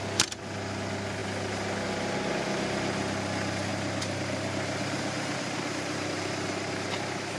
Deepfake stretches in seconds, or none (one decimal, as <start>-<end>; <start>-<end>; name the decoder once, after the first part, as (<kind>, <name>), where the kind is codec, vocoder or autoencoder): 3.7-7.4 (vocoder, BigVGAN v2)